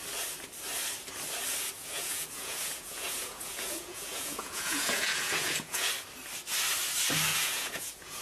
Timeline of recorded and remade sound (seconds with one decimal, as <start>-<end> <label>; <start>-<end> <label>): 0.0-1.8 recorded; 1.8-5.9 remade; 5.9-7.3 recorded; 7.3-8.2 remade